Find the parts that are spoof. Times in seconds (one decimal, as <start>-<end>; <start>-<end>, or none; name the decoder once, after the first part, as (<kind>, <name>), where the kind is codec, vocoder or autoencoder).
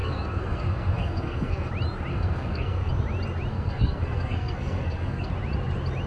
0.0-1.7 (codec, SNAC); 2.1-2.9; 3.5-5.3